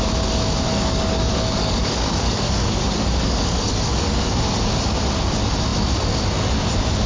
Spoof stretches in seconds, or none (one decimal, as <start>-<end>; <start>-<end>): 0.7-4.3